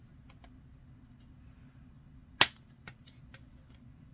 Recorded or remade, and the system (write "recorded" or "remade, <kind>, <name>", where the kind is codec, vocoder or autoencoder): recorded